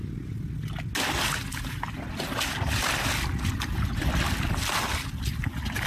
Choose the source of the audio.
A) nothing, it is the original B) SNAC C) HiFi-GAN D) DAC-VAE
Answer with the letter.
A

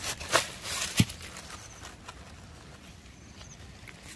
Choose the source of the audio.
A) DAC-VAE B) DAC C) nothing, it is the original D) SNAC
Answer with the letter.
C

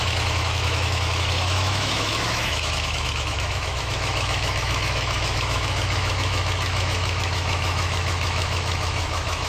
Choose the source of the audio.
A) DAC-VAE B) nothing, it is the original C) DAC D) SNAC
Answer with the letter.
A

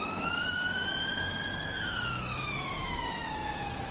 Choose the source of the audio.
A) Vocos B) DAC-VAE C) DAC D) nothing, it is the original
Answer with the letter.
B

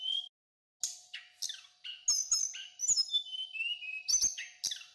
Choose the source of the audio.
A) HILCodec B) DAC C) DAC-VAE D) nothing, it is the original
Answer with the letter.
D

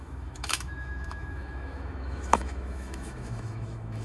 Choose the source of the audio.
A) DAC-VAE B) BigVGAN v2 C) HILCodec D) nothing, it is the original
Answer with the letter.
A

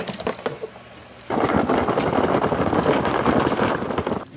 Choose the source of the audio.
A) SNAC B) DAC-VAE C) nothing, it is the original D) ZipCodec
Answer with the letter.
C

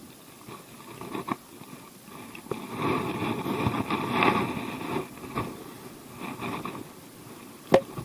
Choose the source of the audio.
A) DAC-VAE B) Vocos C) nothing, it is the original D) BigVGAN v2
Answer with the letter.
C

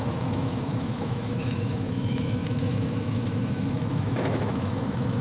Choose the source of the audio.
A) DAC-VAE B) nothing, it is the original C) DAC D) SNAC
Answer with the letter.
A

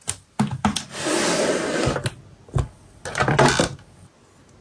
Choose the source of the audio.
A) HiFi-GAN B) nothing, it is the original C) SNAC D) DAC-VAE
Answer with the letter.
B